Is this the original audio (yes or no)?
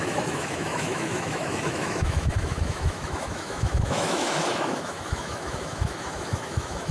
no